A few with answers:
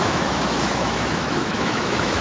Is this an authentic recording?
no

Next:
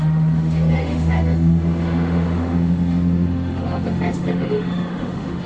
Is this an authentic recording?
no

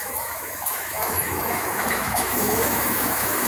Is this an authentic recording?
no